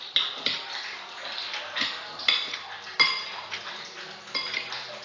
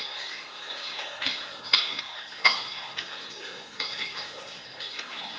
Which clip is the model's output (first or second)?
second